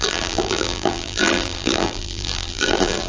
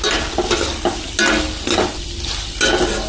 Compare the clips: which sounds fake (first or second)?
first